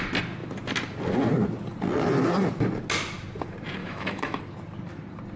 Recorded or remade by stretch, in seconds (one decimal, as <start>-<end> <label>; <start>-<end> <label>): 0.0-3.8 recorded; 3.8-4.4 remade; 4.4-5.4 recorded